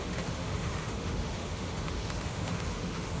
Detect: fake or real fake